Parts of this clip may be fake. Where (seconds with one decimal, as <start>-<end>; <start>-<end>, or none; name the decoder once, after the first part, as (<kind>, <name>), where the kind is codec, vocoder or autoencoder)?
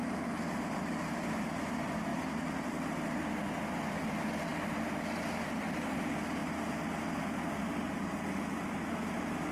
0.0-1.1 (vocoder, BigVGAN v2); 2.1-3.3; 4.5-5.9